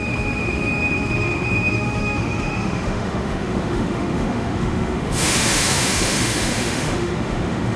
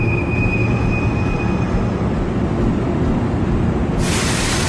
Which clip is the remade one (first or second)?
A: first